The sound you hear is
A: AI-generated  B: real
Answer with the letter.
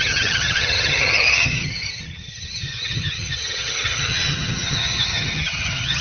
A